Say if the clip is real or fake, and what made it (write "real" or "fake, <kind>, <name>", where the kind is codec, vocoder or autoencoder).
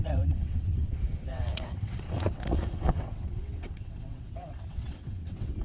fake, vocoder, WaveNeXt